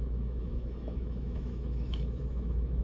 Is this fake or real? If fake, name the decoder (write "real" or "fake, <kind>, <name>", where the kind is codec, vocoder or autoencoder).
fake, autoencoder, DAC-VAE